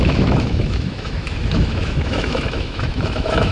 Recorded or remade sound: remade